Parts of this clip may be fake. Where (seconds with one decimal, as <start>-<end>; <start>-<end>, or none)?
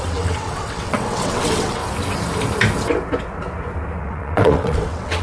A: 0.0-1.8; 4.0-5.2